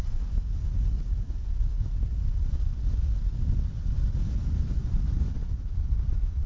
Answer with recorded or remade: recorded